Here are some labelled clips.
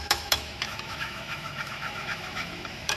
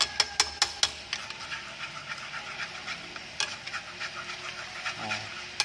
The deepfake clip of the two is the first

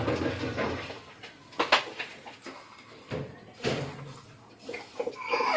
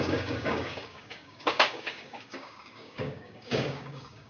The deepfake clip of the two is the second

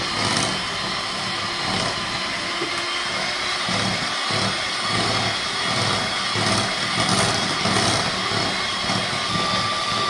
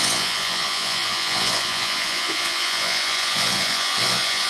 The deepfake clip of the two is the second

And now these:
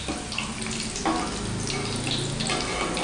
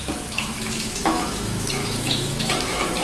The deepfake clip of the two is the second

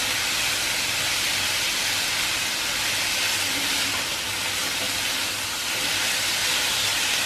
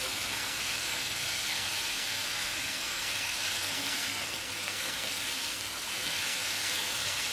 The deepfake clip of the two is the second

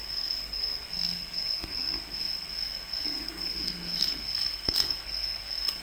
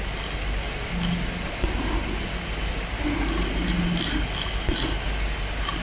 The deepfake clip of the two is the first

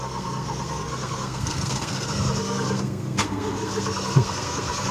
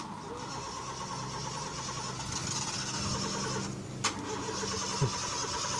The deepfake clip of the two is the first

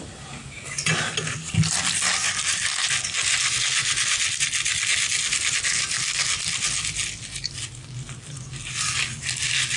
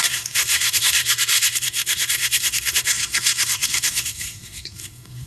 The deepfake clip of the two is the second